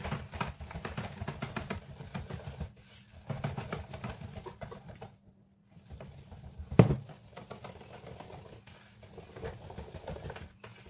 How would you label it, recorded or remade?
recorded